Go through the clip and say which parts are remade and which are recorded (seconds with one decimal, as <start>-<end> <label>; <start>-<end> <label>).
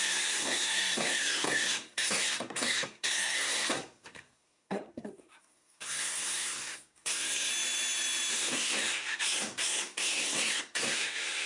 0.0-7.5 remade; 7.5-8.3 recorded; 8.3-11.5 remade